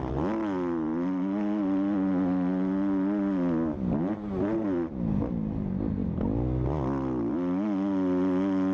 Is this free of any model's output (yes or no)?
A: yes